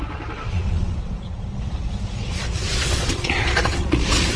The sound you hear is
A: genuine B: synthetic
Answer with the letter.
B